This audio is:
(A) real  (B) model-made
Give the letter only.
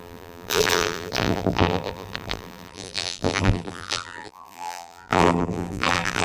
B